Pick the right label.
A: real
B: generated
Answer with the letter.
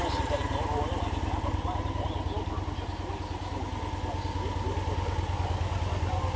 A